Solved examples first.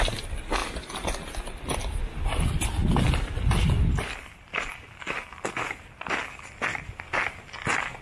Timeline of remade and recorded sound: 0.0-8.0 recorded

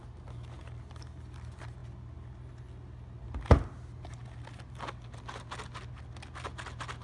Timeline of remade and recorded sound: 0.0-7.0 recorded

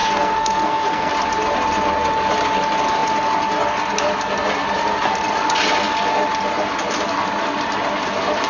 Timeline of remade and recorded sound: 0.0-1.1 remade; 1.1-8.5 recorded